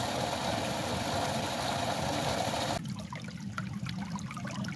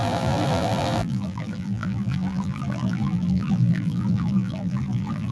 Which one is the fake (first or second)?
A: second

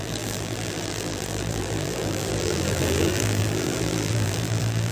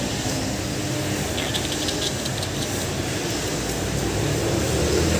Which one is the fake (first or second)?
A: first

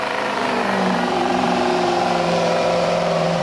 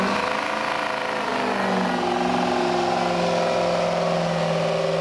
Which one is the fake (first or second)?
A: first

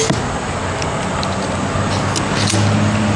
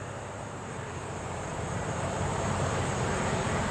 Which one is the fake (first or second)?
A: second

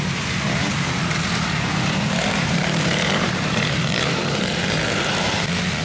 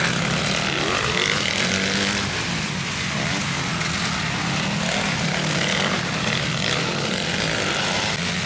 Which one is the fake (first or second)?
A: first